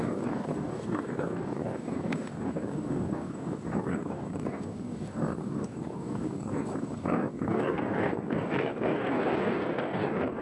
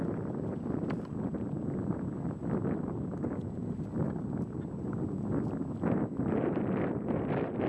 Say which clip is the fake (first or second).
first